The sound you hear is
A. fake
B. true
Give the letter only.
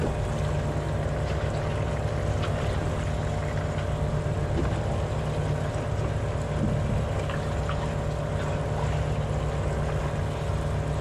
B